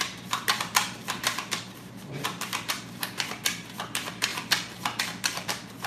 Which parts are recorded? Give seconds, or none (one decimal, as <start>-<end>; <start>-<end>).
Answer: 4.3-5.0